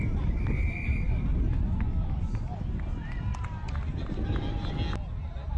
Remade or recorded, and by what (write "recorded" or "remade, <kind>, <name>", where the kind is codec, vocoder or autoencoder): recorded